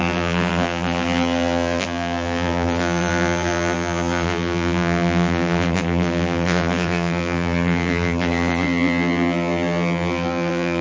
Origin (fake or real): fake